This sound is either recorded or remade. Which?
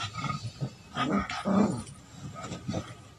recorded